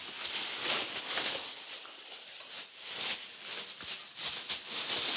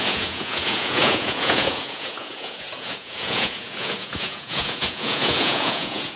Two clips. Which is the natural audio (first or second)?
first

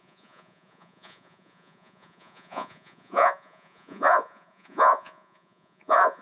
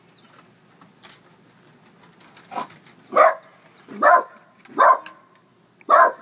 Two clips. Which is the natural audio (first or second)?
second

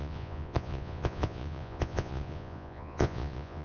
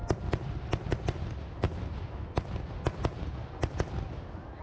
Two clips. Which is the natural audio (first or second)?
second